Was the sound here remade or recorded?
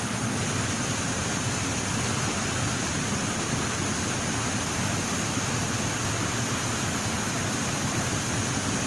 recorded